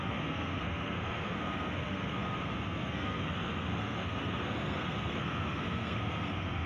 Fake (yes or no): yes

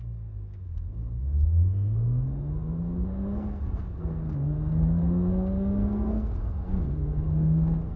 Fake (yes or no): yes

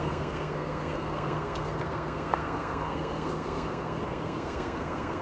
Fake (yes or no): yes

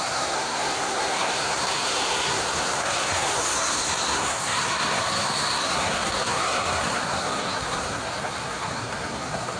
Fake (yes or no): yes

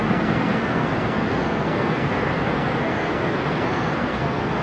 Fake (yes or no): yes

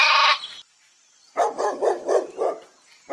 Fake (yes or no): no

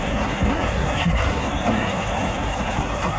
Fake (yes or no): yes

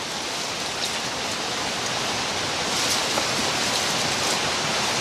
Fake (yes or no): no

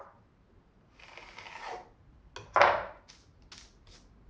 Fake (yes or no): no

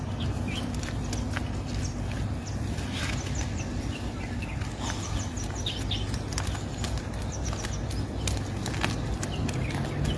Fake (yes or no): no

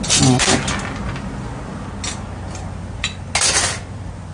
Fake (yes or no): no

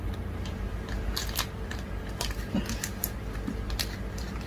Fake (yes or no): no